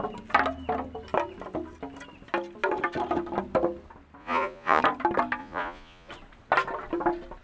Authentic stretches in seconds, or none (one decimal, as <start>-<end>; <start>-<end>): 0.0-4.2; 4.8-5.4; 6.1-7.4